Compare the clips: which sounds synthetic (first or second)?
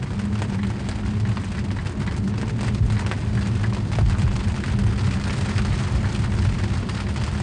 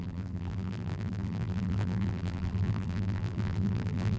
second